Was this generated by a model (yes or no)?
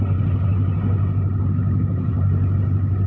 no